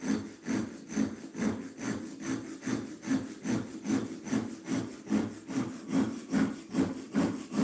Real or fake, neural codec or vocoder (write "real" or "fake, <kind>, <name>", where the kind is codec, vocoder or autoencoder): real